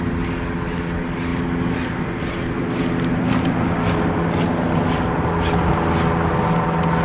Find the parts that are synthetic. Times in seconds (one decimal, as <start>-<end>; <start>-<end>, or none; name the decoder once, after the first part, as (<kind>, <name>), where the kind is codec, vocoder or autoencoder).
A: none